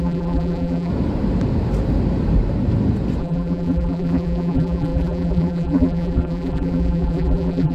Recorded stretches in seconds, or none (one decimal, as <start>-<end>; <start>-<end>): 0.9-3.2